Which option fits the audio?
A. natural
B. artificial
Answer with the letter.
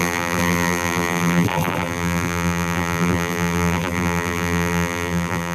B